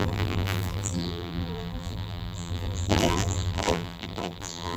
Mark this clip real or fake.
fake